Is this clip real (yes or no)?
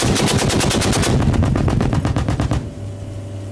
yes